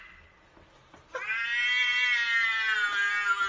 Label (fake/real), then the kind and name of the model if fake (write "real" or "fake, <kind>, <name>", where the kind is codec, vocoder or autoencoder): real